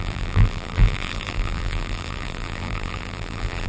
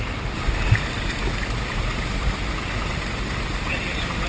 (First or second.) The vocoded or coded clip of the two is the first